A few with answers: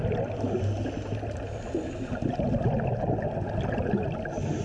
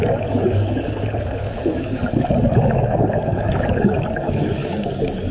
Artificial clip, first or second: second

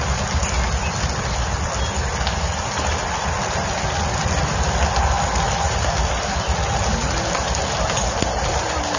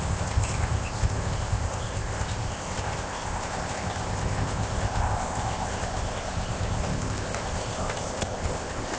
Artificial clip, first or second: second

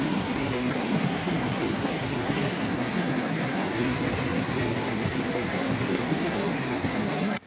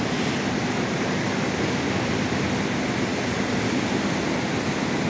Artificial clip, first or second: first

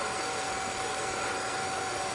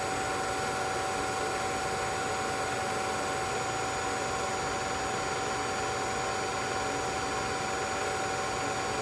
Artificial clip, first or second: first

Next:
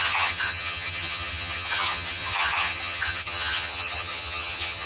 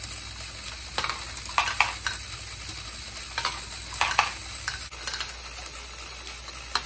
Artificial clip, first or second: first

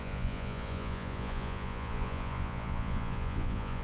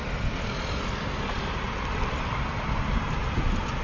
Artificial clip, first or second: first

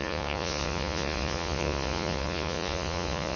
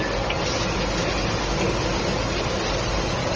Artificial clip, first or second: first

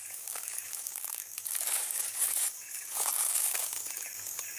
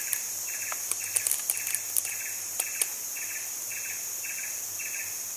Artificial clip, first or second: first